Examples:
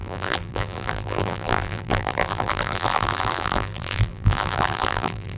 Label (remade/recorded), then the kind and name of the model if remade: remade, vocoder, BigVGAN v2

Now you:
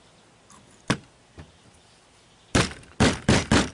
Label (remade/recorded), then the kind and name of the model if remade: recorded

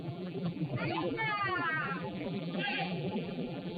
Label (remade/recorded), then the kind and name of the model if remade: remade, vocoder, BigVGAN v2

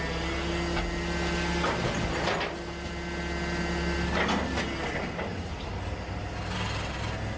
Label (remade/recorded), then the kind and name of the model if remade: recorded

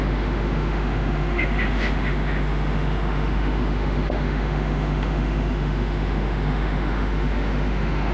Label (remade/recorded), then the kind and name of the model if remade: remade, autoencoder, DAC-VAE